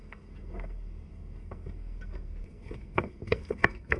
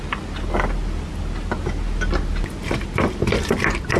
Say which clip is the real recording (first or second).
second